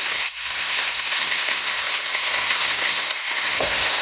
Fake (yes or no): yes